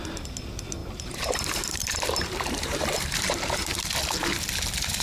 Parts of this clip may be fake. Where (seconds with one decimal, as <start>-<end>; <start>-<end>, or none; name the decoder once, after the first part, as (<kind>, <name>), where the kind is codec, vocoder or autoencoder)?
0.8-3.8 (vocoder, BigVGAN v2)